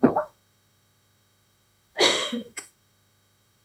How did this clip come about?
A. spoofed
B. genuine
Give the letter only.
A